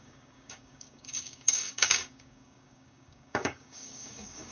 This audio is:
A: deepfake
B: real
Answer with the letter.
A